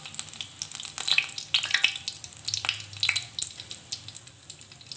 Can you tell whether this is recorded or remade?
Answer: recorded